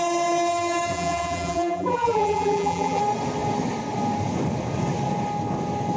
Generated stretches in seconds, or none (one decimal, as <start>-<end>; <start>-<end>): 0.9-3.0